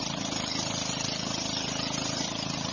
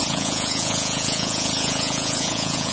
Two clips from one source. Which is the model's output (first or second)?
second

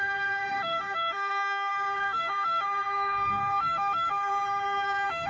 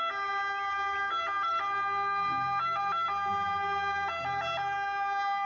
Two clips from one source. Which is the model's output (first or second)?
first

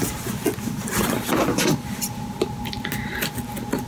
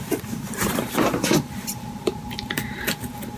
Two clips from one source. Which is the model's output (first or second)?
second